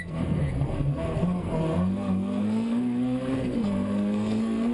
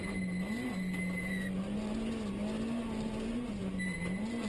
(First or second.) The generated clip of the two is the first